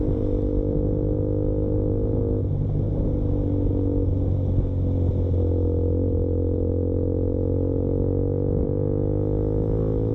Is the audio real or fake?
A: real